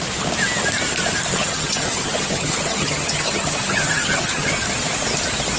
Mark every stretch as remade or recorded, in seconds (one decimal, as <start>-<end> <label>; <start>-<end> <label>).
0.0-1.4 recorded; 1.4-4.5 remade; 4.5-5.6 recorded